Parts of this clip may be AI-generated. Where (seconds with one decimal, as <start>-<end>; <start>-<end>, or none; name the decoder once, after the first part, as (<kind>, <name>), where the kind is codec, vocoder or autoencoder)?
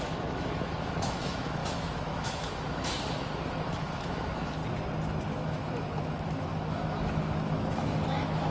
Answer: 0.0-4.6 (autoencoder, DAC-VAE); 5.3-8.5